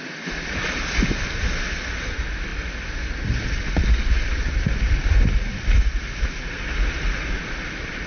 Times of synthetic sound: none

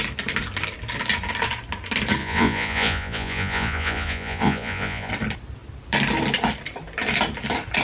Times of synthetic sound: 2.2-5.1 (vocoder, Vocos)

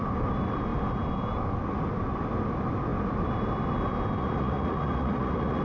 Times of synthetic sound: 4.2-5.6 (vocoder, Vocos)

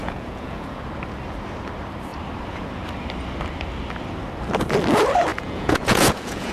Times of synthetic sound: 0.0-0.8 (vocoder, Vocos); 5.3-6.5

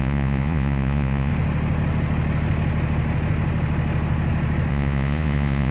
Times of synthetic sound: 0.0-1.3 (vocoder, Vocos); 4.7-5.7